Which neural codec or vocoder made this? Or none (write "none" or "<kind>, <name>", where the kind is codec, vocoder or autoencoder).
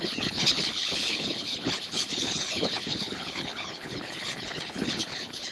codec, HILCodec